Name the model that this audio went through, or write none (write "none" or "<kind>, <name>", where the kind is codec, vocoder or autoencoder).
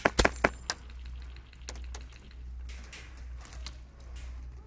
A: none